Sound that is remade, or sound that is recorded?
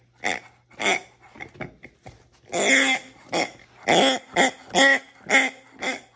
recorded